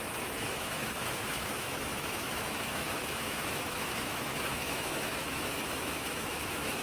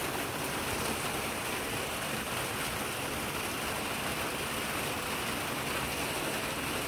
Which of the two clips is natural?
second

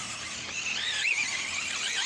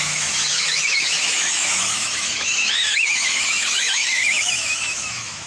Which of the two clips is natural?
first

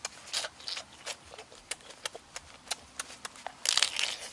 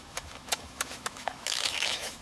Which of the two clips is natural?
first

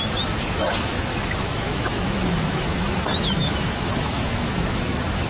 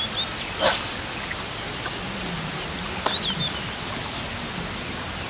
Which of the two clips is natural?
second